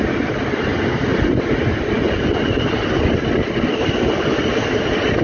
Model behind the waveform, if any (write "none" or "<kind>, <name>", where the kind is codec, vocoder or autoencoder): none